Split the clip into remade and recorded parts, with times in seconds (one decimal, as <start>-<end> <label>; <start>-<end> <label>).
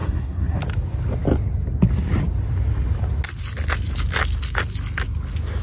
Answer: 0.0-0.6 remade; 0.6-5.6 recorded